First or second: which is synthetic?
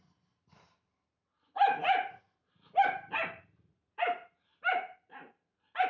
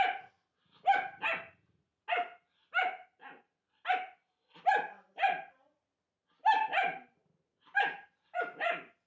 first